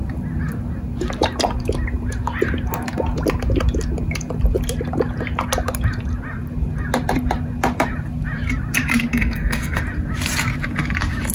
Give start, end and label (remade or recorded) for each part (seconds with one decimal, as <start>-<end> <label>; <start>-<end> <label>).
0.0-9.1 recorded; 9.1-9.8 remade; 9.8-11.3 recorded